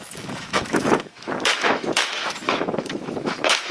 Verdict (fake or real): fake